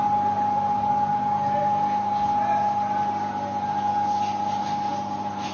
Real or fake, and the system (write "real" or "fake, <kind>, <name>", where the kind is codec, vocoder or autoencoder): real